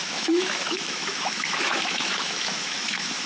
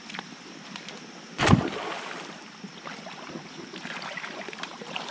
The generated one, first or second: first